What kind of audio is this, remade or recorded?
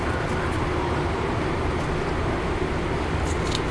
recorded